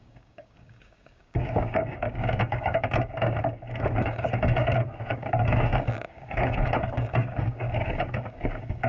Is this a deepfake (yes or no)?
yes